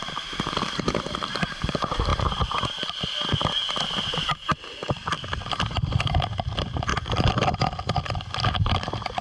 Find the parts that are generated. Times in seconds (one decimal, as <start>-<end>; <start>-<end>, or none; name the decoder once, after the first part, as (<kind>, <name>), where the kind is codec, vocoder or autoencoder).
0.0-2.1 (vocoder, BigVGAN v2); 6.1-6.9; 8.4-9.2

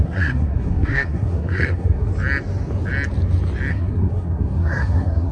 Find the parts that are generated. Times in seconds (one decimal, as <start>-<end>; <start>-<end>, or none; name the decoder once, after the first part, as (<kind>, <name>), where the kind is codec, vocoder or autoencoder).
0.0-2.1 (codec, SNAC); 3.7-5.3

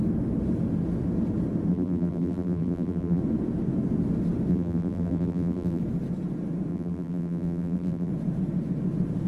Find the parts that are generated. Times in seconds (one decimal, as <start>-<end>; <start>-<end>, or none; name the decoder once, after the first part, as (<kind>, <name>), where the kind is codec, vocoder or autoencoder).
1.7-3.2 (vocoder, BigVGAN v2); 4.5-5.8; 6.7-8.1

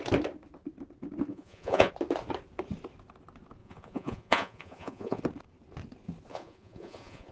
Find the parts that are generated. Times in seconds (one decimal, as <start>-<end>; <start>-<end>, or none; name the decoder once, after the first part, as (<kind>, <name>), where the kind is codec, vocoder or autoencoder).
1.3-1.9 (vocoder, Vocos); 3.6-5.2; 6.3-7.3

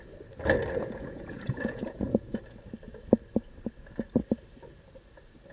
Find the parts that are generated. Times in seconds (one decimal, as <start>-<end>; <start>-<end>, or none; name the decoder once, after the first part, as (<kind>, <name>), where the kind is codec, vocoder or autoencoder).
0.8-2.4 (vocoder, Vocos)

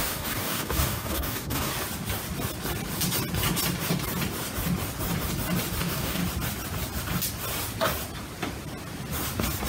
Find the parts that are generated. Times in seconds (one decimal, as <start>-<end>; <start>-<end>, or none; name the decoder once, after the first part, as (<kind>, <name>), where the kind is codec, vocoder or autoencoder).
0.0-1.7 (codec, DAC); 5.8-6.2